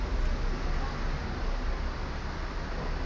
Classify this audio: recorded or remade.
recorded